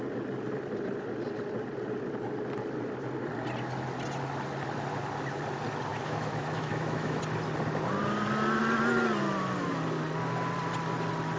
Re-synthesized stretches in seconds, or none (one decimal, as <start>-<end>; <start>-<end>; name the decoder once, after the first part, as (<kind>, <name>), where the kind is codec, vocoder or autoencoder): 5.9-7.2 (autoencoder, DAC-VAE)